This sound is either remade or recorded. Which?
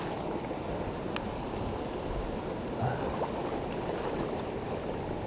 recorded